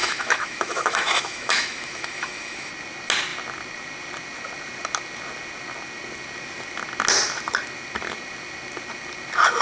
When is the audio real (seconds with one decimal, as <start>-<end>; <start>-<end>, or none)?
2.7-9.6